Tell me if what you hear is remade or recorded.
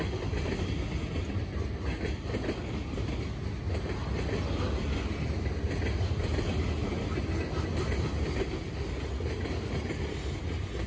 recorded